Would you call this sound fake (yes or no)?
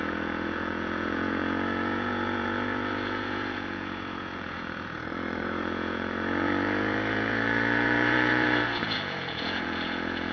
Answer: yes